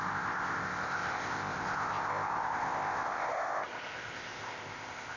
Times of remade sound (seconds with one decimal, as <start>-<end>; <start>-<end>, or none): 0.0-5.2